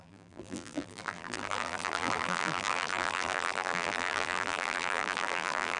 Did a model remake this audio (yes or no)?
yes